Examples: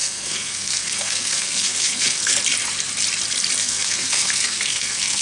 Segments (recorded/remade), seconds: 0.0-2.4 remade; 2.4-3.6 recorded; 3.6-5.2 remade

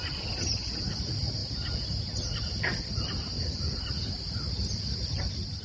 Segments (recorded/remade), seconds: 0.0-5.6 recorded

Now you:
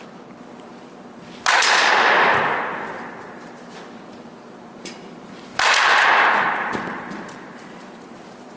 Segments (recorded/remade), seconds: 0.0-0.7 remade; 0.7-4.5 recorded; 4.5-8.6 remade